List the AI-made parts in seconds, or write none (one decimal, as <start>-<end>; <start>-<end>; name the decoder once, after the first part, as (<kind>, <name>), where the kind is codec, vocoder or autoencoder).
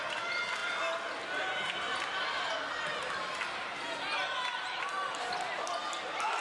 none